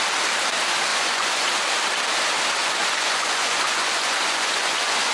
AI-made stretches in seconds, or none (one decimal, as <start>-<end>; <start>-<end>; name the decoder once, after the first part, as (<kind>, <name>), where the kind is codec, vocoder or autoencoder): 0.9-1.5 (vocoder, Vocos); 2.6-5.1